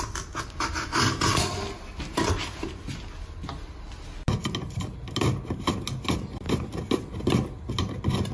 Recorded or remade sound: recorded